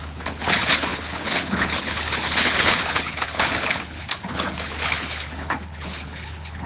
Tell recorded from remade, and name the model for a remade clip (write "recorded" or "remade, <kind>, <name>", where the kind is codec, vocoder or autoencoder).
remade, codec, HILCodec